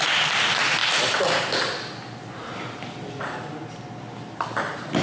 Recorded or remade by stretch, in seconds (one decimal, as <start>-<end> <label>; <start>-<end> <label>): 0.0-5.0 recorded